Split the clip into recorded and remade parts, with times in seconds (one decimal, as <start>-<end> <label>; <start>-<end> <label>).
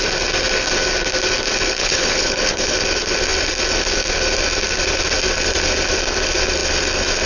0.0-1.8 recorded; 1.8-2.8 remade; 2.8-7.3 recorded